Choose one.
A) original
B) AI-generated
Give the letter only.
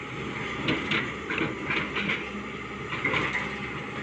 A